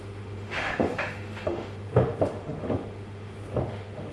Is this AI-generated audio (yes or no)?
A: yes